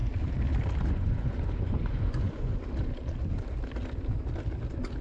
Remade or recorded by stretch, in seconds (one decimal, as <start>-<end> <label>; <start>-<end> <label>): 0.0-0.9 recorded; 0.9-2.5 remade; 2.5-5.0 recorded